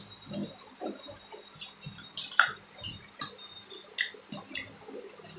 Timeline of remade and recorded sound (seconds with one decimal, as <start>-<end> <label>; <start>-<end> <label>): 0.0-5.4 recorded